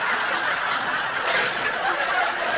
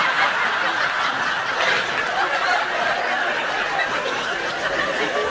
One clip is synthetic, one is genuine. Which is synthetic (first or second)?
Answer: first